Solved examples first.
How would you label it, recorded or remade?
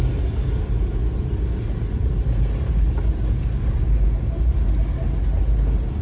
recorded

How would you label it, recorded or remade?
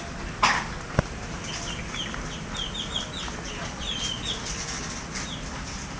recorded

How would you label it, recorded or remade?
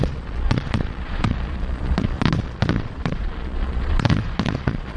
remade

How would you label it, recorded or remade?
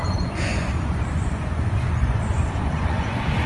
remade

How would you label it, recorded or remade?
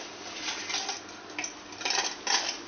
recorded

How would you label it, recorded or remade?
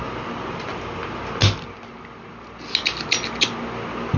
recorded